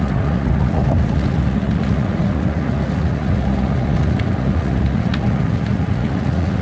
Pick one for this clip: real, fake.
fake